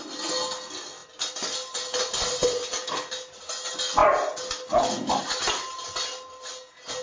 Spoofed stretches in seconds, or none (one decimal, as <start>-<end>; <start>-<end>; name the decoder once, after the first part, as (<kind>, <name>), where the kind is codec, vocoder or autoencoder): none